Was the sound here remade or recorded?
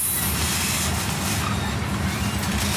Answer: recorded